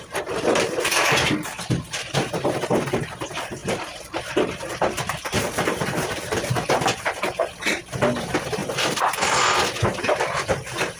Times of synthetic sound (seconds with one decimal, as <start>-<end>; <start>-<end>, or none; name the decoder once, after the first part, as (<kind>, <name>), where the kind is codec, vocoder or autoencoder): 0.0-8.6 (vocoder, BigVGAN v2); 10.0-11.0